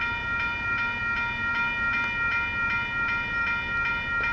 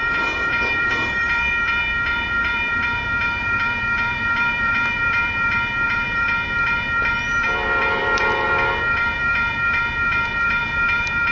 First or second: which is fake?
second